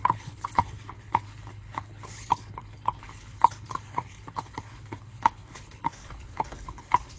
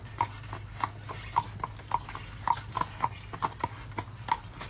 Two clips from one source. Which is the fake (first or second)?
first